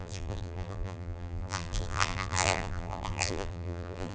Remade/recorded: remade